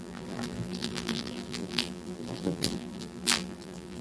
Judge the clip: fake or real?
fake